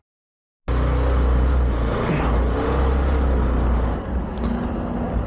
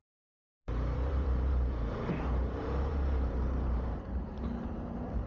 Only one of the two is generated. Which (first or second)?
second